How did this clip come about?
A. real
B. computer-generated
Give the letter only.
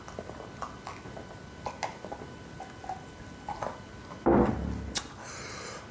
A